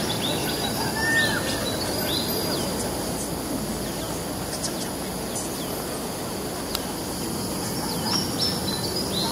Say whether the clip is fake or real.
real